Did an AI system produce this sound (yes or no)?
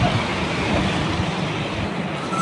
no